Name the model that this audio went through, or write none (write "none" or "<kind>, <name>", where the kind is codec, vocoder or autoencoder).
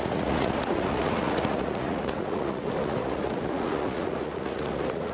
vocoder, Vocos